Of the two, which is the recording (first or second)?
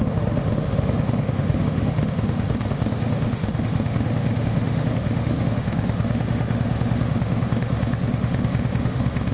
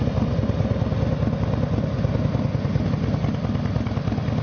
second